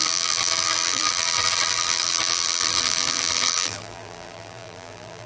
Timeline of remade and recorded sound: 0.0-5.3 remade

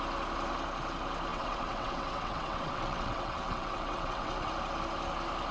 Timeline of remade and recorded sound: 0.0-1.3 recorded; 1.3-4.5 remade; 4.5-5.5 recorded

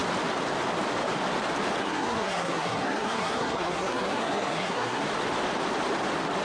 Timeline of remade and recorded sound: 0.0-1.8 recorded; 1.8-5.0 remade; 5.0-6.4 recorded

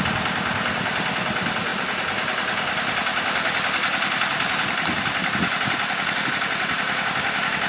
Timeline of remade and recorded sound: 0.0-7.7 recorded

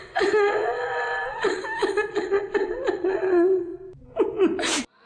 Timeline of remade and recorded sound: 0.0-1.6 remade; 1.6-2.1 recorded; 2.1-3.7 remade; 3.7-5.1 recorded

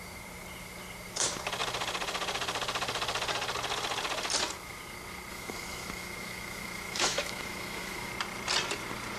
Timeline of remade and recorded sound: 0.0-5.3 recorded; 5.3-8.1 remade; 8.1-9.2 recorded